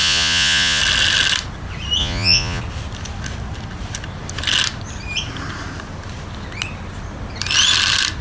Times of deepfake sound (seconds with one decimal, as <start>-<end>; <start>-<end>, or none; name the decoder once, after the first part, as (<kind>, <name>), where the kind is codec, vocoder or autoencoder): 0.0-0.8 (vocoder, Vocos); 2.0-2.6

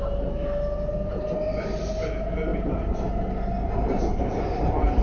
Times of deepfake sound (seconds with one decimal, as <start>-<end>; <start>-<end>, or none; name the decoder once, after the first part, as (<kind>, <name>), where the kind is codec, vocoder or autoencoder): none